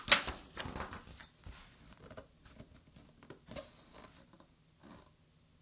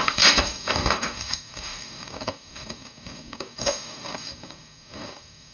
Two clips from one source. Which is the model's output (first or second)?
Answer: second